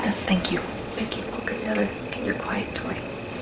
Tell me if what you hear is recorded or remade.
remade